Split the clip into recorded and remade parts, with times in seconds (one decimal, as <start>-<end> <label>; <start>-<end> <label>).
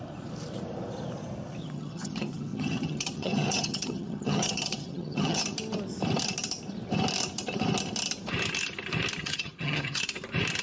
0.0-1.6 recorded; 1.6-5.4 remade; 5.4-9.2 recorded; 9.2-10.0 remade; 10.0-10.6 recorded